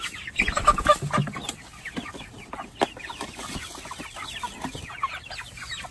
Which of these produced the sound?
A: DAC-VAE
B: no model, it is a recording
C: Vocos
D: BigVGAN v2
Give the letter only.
B